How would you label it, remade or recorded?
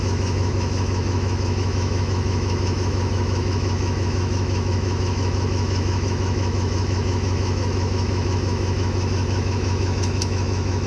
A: remade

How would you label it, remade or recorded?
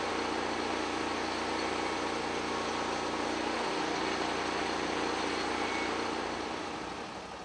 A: recorded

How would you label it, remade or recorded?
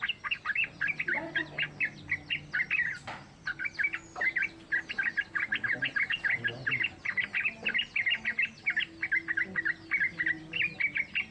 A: recorded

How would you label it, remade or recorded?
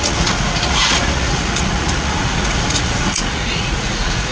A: remade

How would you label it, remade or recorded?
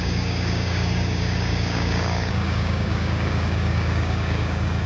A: remade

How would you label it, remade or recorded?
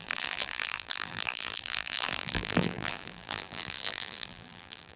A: remade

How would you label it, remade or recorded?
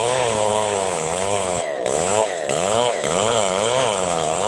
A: remade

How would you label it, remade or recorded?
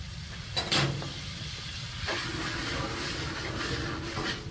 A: recorded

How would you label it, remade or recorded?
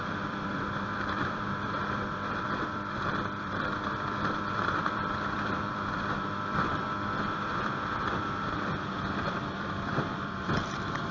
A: remade